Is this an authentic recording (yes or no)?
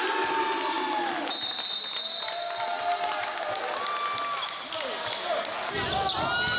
yes